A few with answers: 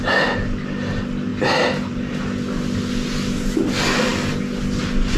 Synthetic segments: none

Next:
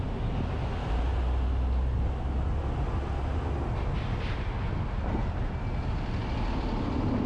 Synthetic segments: none

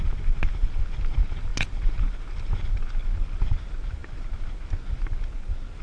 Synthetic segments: none

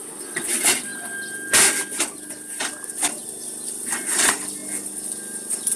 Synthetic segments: 3.2-3.9 (vocoder, BigVGAN v2)